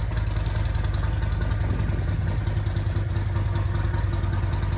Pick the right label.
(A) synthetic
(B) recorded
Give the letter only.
B